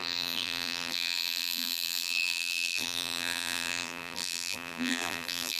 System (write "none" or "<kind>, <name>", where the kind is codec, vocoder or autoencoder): vocoder, BigVGAN v2